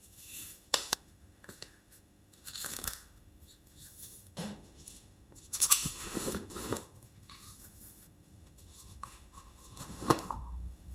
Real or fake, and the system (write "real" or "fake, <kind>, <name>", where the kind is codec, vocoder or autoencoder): fake, autoencoder, DAC-VAE